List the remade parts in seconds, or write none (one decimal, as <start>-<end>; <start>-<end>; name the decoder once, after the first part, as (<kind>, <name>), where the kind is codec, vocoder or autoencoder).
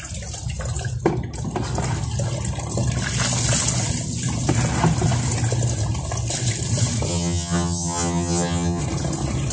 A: 7.1-8.8 (vocoder, HiFi-GAN)